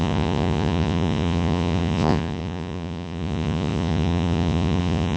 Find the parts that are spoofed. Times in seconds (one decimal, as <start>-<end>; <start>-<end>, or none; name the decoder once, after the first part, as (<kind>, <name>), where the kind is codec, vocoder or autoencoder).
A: 0.0-5.2 (vocoder, Vocos)